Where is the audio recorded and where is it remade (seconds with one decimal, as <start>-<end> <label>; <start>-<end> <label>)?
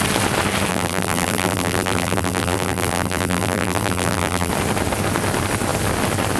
0.0-0.7 recorded; 0.7-4.5 remade; 4.5-6.4 recorded